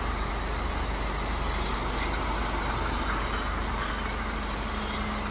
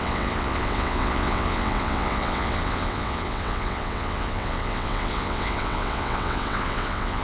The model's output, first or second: second